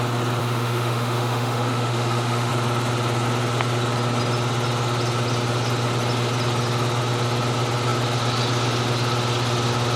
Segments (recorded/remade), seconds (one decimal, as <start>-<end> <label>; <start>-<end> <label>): 0.0-0.4 recorded; 0.4-2.5 remade; 2.5-10.0 recorded